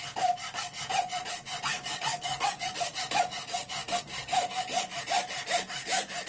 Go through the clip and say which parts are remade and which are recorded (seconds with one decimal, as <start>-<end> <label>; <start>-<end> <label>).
0.0-1.7 recorded; 1.7-2.7 remade; 2.7-6.3 recorded